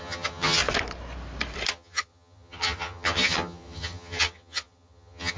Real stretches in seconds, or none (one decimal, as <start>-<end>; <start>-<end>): 0.6-1.7